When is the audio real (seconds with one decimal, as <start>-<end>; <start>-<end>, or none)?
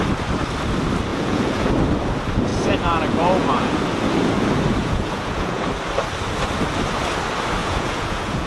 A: 0.0-1.1; 1.7-2.5; 3.8-4.8; 5.7-7.6